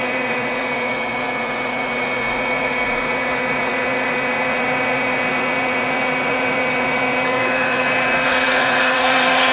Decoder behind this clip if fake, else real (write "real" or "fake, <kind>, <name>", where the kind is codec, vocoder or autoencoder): fake, vocoder, Vocos